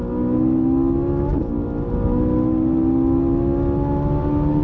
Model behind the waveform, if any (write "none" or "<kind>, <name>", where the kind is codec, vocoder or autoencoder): none